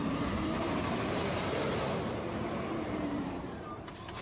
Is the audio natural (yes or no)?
no